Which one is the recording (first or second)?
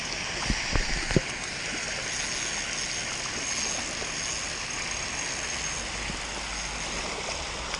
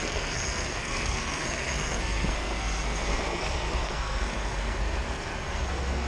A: first